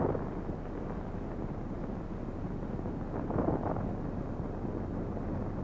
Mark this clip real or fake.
real